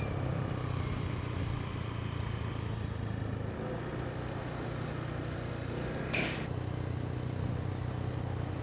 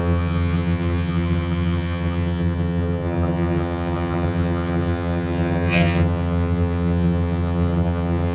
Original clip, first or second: first